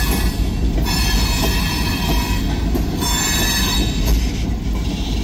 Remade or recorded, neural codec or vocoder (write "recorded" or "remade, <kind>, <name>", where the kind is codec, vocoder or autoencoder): recorded